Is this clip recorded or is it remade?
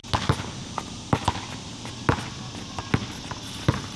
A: recorded